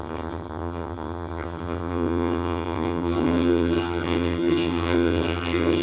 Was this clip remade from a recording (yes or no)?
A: yes